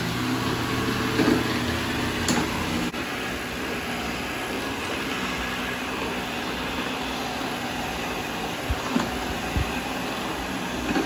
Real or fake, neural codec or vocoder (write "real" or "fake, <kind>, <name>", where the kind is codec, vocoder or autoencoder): real